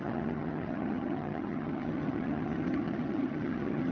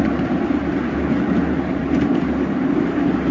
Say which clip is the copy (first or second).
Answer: first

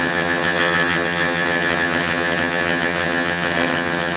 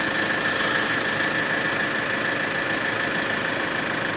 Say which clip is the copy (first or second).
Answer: first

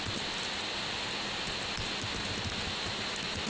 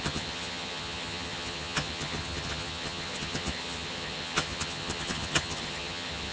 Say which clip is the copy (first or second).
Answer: second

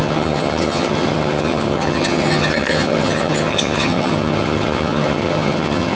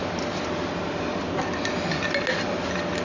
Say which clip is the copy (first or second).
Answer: first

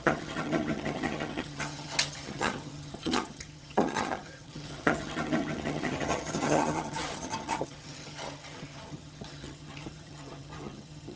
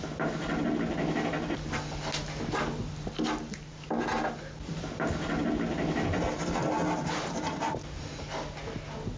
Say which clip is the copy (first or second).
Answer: first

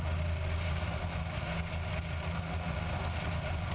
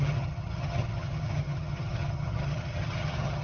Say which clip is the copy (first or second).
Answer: second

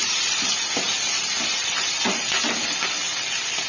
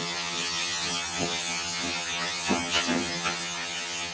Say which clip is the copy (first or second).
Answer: second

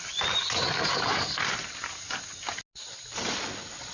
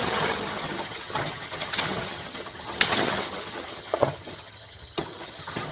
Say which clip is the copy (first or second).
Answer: second